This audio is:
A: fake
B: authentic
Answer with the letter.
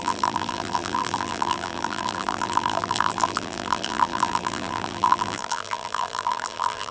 A